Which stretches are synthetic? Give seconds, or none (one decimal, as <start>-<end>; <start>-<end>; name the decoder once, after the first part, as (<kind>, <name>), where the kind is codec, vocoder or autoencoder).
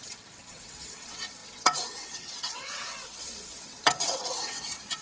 0.0-5.0 (vocoder, WaveNeXt)